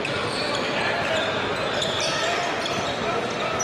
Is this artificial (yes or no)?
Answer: no